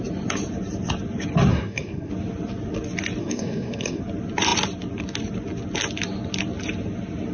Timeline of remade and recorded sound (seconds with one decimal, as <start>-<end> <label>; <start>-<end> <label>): 0.0-1.5 recorded; 1.5-2.1 remade; 2.1-3.2 recorded; 3.2-4.0 remade; 4.0-7.3 recorded